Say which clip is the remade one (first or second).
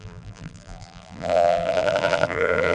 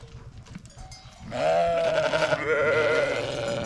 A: first